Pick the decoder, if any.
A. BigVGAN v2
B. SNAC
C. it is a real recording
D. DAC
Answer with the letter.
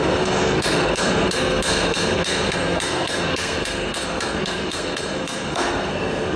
B